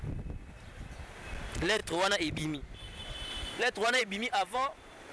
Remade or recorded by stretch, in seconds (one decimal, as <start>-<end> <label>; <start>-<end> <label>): 0.0-1.8 recorded; 1.8-5.1 remade